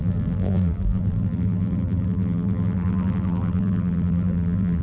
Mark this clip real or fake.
fake